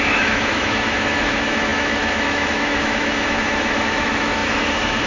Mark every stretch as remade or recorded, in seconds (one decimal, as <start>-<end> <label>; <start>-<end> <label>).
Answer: 0.0-5.1 remade

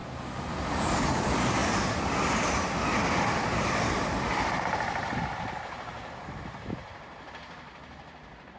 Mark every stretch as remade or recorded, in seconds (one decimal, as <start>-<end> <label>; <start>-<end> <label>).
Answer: 0.0-1.6 recorded; 1.6-4.6 remade; 4.6-6.8 recorded; 6.8-7.3 remade; 7.3-8.6 recorded

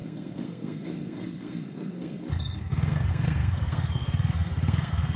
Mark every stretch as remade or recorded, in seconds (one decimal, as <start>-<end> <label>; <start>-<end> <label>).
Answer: 0.0-5.2 remade

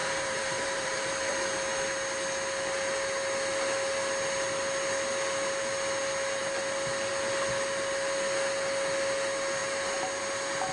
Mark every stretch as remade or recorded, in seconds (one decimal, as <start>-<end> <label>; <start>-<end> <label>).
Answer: 0.0-1.1 remade; 1.1-10.7 recorded

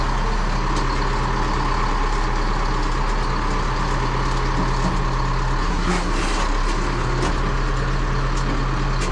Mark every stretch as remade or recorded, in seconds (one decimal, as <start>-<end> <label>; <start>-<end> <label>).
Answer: 0.0-5.6 recorded; 5.6-6.1 remade; 6.1-9.1 recorded